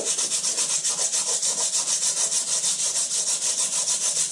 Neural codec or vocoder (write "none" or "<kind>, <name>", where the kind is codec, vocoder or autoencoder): none